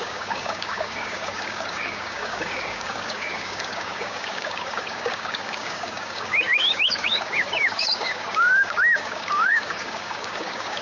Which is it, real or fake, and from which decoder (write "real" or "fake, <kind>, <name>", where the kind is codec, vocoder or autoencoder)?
fake, codec, DAC